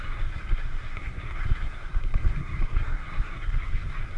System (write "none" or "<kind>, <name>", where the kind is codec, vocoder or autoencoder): codec, SNAC